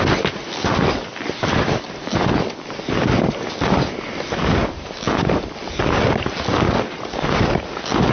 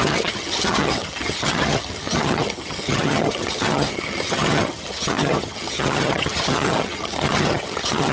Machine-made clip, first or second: second